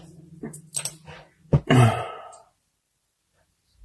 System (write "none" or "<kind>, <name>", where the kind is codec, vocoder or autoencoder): none